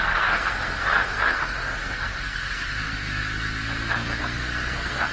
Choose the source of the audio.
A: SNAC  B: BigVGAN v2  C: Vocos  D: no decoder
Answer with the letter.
A